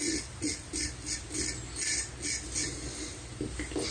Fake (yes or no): no